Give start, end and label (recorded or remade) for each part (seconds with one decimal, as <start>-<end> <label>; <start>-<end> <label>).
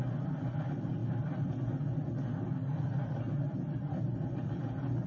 0.0-2.7 recorded; 2.7-4.5 remade; 4.5-5.1 recorded